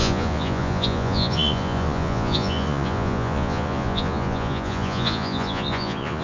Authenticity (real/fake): fake